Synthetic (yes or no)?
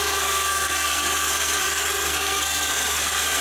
yes